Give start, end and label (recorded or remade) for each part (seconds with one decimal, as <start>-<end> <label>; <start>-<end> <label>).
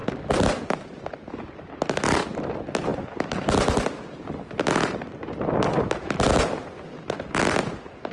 0.0-8.1 recorded